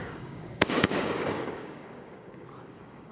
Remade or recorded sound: remade